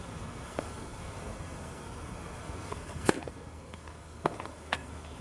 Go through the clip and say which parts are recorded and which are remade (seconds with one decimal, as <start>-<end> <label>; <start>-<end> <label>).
0.0-5.2 remade